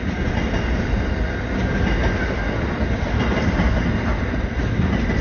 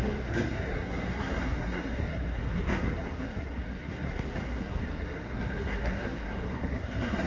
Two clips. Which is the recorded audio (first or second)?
first